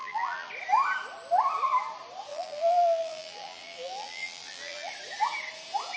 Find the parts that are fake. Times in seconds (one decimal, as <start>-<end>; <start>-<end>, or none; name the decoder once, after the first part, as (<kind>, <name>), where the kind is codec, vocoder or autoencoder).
0.0-0.5 (vocoder, BigVGAN v2); 2.3-4.9